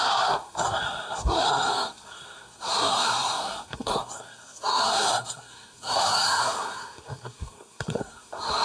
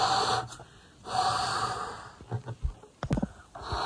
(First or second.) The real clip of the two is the second